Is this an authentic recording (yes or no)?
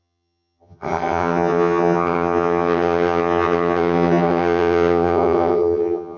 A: no